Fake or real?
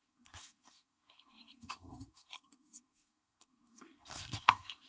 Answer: fake